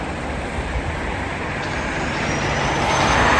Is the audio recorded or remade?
recorded